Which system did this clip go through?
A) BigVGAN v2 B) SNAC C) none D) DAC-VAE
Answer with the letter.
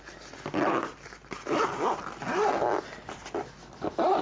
C